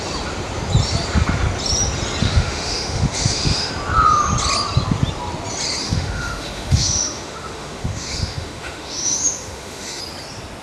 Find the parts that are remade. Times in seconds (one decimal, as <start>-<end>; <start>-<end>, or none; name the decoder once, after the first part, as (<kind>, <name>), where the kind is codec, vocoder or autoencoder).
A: 2.2-3.7 (autoencoder, DAC-VAE); 5.8-10.0